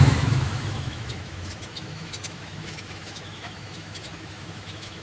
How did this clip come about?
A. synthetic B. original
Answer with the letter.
A